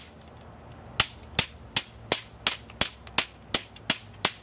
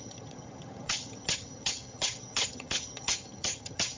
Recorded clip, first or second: first